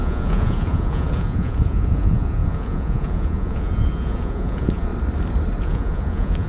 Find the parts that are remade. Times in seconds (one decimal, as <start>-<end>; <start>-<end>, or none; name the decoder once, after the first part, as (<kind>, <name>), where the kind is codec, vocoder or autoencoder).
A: 0.0-4.9 (vocoder, Vocos); 5.6-6.5